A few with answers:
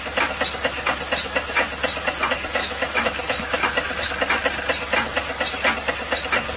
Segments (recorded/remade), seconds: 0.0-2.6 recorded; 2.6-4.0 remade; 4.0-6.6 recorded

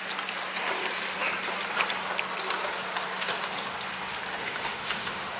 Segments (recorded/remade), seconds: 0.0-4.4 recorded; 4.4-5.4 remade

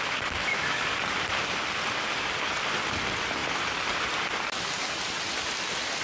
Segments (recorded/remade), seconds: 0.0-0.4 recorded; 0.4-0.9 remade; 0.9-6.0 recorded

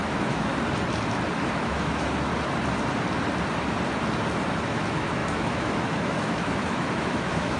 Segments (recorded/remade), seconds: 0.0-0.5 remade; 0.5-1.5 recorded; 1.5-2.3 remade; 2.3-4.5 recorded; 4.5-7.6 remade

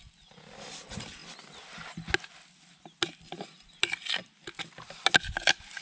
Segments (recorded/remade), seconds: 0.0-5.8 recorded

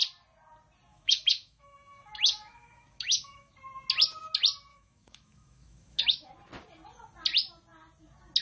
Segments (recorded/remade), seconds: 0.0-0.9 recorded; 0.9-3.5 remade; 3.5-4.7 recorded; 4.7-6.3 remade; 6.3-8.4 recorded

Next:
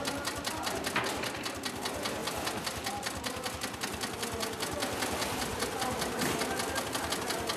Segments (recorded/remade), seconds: 0.0-7.6 recorded